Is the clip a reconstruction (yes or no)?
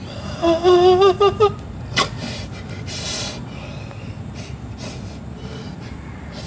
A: no